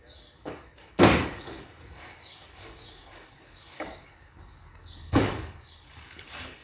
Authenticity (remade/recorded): remade